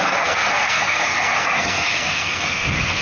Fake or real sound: fake